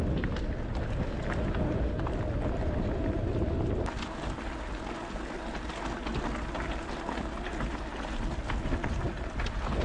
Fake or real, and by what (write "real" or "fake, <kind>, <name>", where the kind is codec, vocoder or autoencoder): real